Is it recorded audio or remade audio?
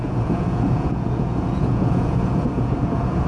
remade